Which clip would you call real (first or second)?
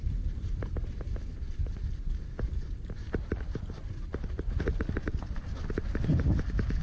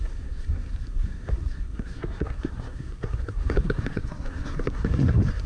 first